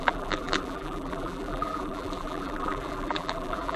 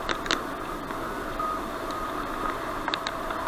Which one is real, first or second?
second